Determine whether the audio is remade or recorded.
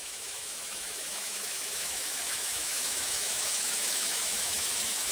remade